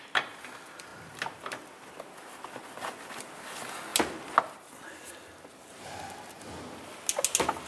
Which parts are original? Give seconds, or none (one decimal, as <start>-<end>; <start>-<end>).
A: 0.0-7.7

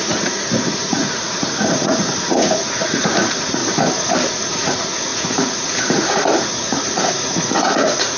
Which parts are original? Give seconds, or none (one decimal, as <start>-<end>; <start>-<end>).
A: 3.6-4.3

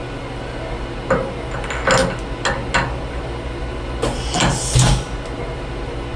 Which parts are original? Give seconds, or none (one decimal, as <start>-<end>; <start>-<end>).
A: 0.0-6.2

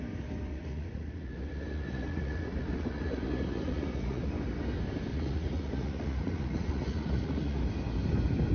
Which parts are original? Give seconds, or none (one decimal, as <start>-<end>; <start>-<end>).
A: 0.0-0.5; 4.3-5.1; 7.6-8.5

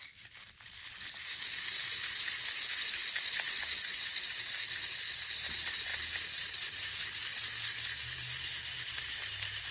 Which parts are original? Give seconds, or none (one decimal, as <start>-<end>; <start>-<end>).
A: 0.0-1.8; 4.8-5.9; 6.9-9.7